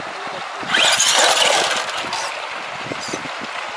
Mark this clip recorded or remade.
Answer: recorded